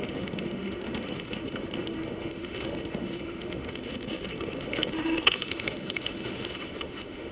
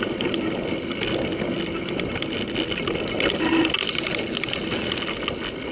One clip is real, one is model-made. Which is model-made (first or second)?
first